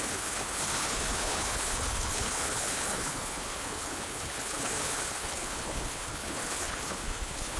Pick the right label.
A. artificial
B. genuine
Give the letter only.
A